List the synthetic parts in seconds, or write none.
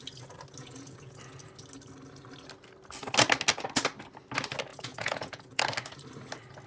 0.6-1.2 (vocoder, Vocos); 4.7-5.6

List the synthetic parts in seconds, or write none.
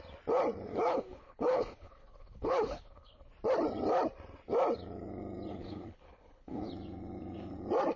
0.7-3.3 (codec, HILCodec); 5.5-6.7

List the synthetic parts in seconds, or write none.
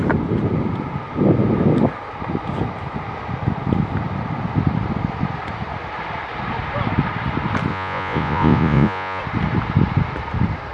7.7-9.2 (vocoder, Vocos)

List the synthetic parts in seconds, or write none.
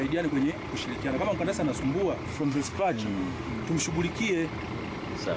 2.3-3.5 (autoencoder, DAC-VAE)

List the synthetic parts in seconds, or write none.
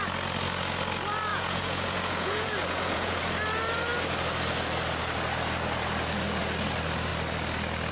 1.3-3.2 (vocoder, Vocos)